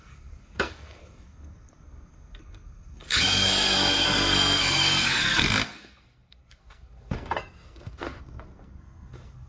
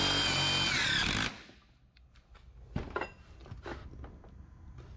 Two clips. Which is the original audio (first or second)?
second